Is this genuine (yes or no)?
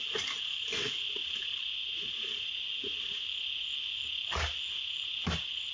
yes